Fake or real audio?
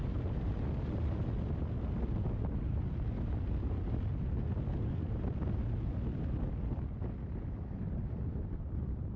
real